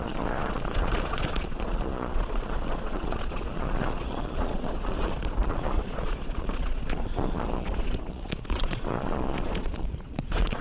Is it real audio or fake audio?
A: fake